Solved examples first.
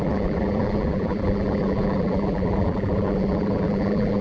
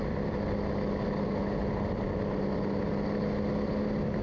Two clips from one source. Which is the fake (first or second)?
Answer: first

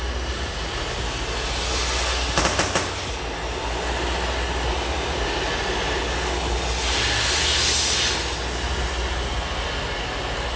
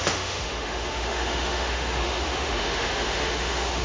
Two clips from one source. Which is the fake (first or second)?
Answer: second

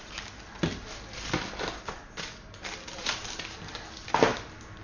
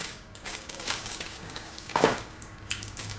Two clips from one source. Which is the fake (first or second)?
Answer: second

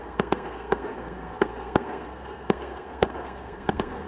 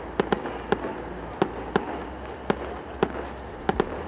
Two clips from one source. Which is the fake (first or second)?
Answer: first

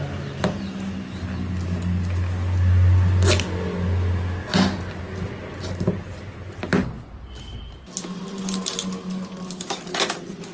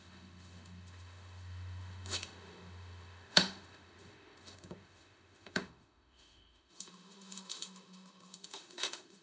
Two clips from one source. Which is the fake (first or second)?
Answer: second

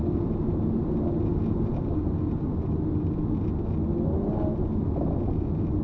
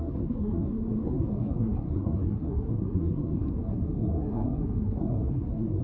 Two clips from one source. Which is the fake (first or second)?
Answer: second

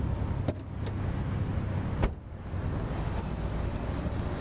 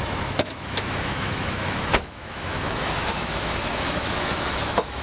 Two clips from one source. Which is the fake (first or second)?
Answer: second